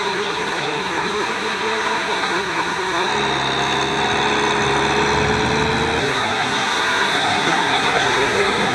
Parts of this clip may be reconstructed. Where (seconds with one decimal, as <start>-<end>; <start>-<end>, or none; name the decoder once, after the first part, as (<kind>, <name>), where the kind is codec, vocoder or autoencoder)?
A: 0.0-3.1 (codec, SNAC); 6.0-8.7